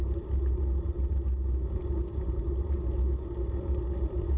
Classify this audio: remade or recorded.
recorded